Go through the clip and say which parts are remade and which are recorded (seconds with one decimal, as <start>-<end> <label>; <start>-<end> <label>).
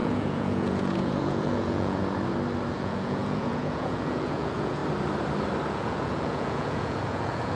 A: 0.0-2.0 remade; 2.0-2.7 recorded; 2.7-4.8 remade; 4.8-5.7 recorded; 5.7-7.6 remade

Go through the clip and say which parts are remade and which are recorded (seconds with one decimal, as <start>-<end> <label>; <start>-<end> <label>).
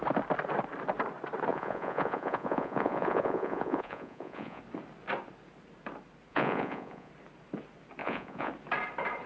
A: 0.0-1.5 recorded; 1.5-4.6 remade; 4.6-6.3 recorded; 6.3-7.1 remade; 7.1-8.0 recorded; 8.0-8.5 remade; 8.5-9.3 recorded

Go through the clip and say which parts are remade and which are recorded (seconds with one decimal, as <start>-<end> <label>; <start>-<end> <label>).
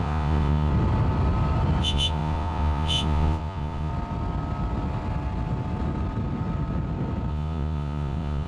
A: 0.0-0.7 remade; 0.7-1.8 recorded; 1.8-3.9 remade; 3.9-7.3 recorded; 7.3-8.5 remade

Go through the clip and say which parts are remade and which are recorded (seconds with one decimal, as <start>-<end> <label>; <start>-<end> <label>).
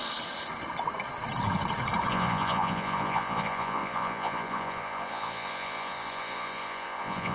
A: 0.0-2.1 recorded; 2.1-7.3 remade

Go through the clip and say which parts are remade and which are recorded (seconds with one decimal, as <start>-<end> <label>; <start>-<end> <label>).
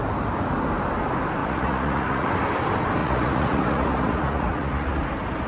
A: 0.0-1.4 recorded; 1.4-2.3 remade; 2.3-3.0 recorded; 3.0-5.0 remade; 5.0-5.5 recorded